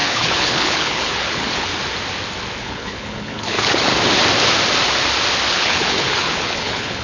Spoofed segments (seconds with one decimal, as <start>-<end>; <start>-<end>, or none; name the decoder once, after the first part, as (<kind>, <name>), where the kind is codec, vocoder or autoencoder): 0.0-1.7 (codec, HILCodec); 2.6-3.9; 5.5-7.0